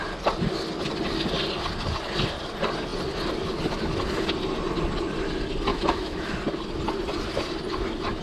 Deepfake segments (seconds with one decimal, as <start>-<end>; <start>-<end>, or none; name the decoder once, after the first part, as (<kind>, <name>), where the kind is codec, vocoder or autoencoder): 5.7-6.3 (autoencoder, DAC-VAE)